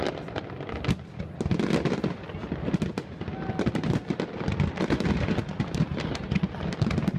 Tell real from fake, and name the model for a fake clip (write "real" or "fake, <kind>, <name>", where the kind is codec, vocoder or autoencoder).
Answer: real